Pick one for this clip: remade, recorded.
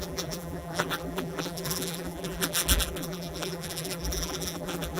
remade